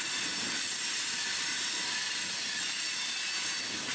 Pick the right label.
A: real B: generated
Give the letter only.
A